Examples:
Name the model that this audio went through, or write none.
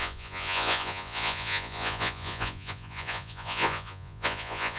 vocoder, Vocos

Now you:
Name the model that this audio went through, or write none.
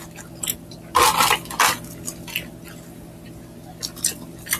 none